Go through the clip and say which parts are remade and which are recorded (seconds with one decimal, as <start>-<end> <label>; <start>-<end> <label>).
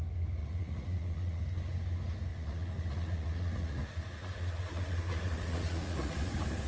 0.0-0.4 recorded; 0.4-1.4 remade; 1.4-2.3 recorded; 2.3-6.3 remade; 6.3-6.7 recorded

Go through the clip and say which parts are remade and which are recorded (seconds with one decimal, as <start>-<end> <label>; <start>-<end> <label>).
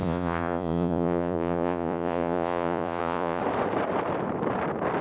0.0-3.4 remade; 3.4-5.0 recorded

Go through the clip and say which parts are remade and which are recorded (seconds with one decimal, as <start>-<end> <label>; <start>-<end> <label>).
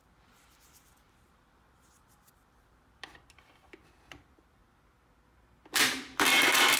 0.0-4.6 remade; 4.6-6.0 recorded; 6.0-6.8 remade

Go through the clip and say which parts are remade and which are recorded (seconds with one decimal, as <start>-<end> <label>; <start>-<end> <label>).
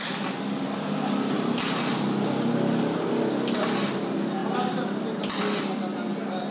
0.0-6.5 recorded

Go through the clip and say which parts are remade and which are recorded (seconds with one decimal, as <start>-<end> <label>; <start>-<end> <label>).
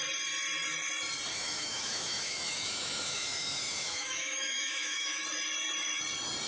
0.0-1.3 recorded; 1.3-5.2 remade; 5.2-6.5 recorded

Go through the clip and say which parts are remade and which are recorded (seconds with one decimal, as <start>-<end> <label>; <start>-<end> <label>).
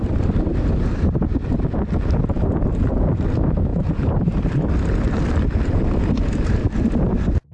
0.0-0.9 recorded; 0.9-2.8 remade; 2.8-3.7 recorded; 3.7-6.0 remade; 6.0-6.6 recorded; 6.6-7.5 remade